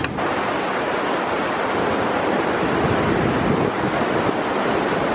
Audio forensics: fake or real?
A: real